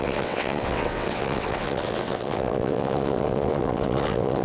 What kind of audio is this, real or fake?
fake